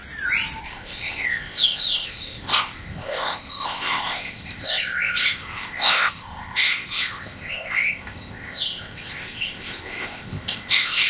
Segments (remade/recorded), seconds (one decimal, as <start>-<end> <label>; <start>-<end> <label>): 0.0-0.6 recorded; 0.6-11.1 remade